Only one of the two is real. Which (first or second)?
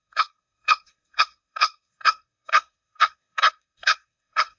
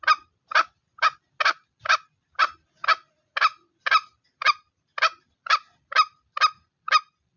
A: second